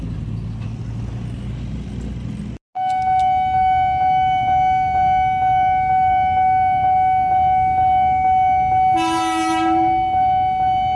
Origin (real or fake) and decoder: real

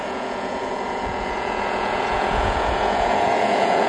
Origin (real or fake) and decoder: fake, vocoder, Vocos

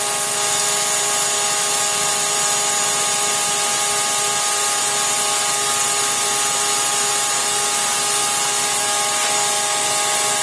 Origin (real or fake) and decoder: real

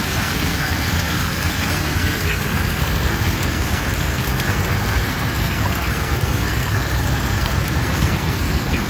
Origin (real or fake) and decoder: fake, codec, SNAC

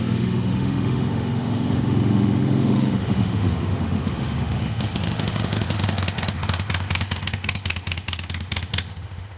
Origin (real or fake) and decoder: fake, autoencoder, DAC-VAE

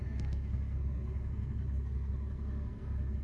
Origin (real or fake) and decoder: fake, codec, SNAC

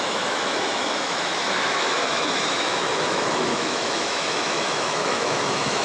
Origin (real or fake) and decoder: fake, autoencoder, DAC-VAE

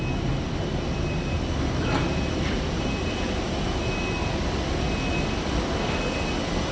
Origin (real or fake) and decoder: real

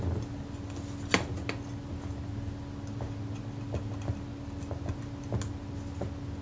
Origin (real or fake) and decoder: real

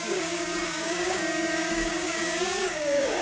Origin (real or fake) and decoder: fake, codec, DAC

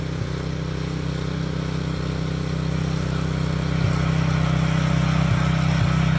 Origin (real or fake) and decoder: real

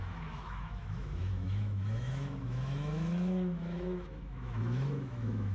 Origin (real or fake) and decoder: fake, autoencoder, DAC-VAE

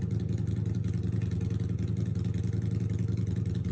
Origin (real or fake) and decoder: real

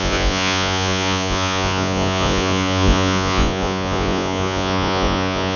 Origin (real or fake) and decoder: fake, vocoder, Vocos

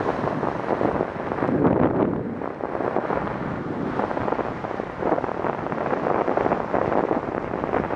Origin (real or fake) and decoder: real